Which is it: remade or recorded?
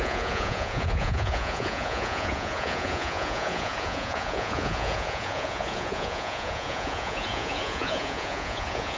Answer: remade